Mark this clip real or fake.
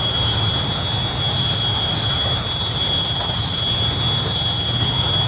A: real